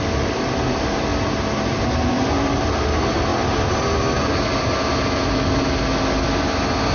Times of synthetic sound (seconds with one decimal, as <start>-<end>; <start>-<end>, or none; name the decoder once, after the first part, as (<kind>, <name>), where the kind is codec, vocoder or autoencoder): none